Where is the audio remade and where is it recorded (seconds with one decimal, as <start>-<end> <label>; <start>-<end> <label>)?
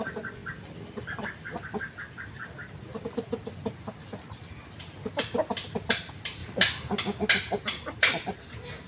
0.0-6.4 remade; 6.4-7.3 recorded; 7.3-8.9 remade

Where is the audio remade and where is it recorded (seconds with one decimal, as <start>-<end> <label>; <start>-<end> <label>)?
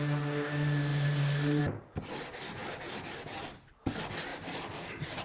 0.0-0.9 recorded; 0.9-1.6 remade; 1.6-4.3 recorded; 4.3-5.2 remade